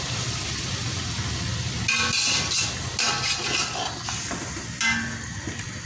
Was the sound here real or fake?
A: real